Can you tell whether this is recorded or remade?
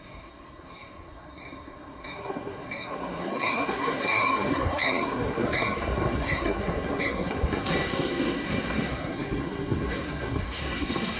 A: remade